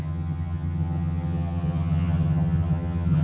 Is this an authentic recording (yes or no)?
no